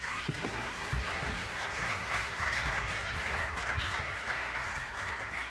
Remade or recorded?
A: remade